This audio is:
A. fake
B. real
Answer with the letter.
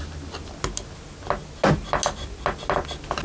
B